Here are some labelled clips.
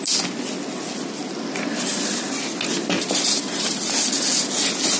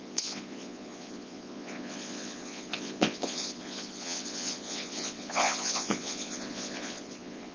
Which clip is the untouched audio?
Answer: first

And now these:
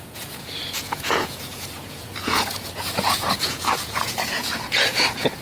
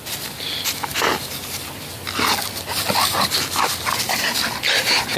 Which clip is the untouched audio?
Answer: second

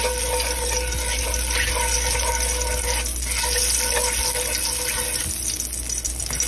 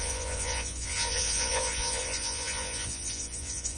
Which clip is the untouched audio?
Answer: first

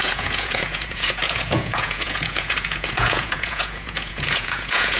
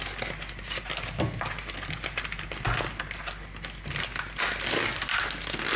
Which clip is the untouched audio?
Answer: second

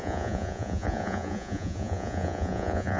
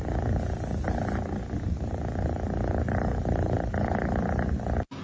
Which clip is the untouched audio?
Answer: second